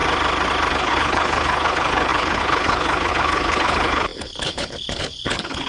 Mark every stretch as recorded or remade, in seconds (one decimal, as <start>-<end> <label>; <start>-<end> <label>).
0.0-0.7 recorded; 0.7-5.7 remade